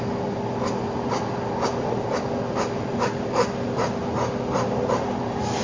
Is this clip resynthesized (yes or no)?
no